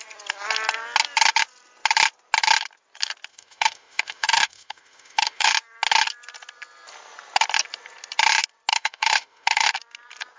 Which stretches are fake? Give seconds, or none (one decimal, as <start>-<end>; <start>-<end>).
3.3-5.5; 8.7-9.7